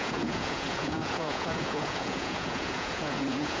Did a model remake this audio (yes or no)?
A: yes